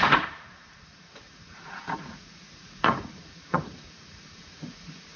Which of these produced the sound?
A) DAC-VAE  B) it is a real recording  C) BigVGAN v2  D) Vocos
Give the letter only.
D